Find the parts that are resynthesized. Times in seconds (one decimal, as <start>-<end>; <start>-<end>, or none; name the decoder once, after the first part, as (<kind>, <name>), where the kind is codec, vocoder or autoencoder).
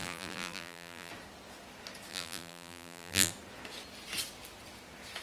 0.0-1.1 (vocoder, BigVGAN v2); 2.1-3.3